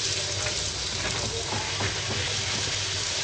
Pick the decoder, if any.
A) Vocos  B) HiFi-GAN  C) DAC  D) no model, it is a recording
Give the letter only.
D